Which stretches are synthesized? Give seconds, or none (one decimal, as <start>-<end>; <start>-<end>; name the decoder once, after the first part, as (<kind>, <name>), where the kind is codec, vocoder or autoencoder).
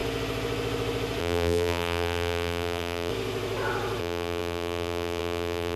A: 1.2-3.1 (vocoder, BigVGAN v2); 4.0-5.8